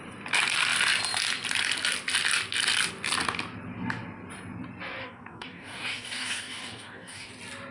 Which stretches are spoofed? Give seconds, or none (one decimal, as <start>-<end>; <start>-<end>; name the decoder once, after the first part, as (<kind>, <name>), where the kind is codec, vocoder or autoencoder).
5.0-7.3 (codec, DAC)